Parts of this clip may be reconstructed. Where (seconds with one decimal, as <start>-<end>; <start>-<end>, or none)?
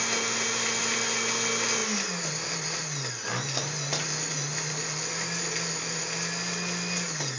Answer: none